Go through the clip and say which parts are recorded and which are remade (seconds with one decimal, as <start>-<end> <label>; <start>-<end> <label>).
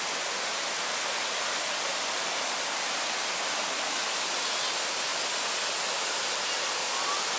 0.0-7.4 recorded